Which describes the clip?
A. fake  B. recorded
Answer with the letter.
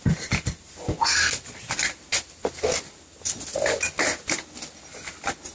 B